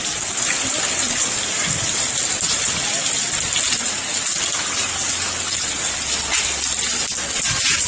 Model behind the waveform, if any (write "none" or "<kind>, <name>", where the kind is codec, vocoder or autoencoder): none